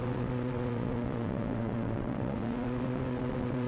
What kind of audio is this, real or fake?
fake